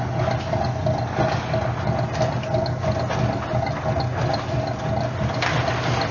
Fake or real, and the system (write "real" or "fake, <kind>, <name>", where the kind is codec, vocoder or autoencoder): real